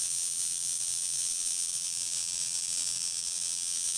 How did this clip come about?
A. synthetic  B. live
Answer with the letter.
A